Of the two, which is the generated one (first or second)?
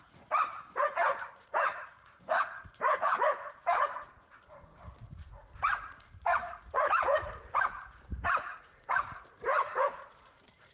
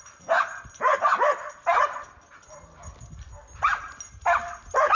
first